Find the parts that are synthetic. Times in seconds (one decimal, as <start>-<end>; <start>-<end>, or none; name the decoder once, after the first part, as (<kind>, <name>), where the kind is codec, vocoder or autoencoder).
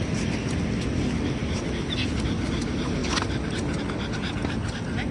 none